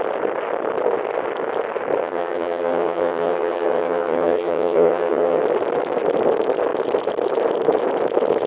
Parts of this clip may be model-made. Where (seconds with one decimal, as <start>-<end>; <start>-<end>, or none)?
2.0-5.4